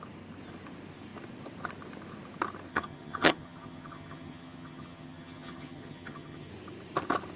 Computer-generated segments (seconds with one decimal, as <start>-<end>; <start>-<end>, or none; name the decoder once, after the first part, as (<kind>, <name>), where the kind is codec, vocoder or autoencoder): 2.7-6.5 (vocoder, HiFi-GAN)